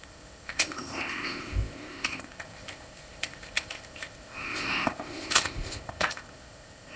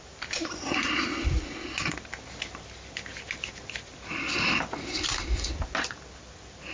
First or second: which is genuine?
second